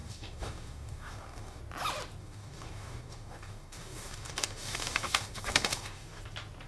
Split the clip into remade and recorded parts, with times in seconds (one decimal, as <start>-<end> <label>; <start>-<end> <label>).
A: 0.0-1.6 remade; 1.6-2.2 recorded; 2.2-6.2 remade; 6.2-6.7 recorded